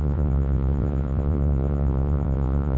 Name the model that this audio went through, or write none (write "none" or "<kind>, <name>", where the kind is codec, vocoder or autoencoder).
vocoder, WaveNeXt